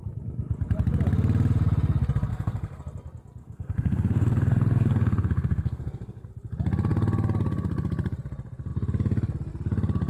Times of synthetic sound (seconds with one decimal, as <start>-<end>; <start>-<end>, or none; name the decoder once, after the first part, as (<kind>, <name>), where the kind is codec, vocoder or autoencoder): 2.3-2.8 (codec, SNAC); 3.4-6.3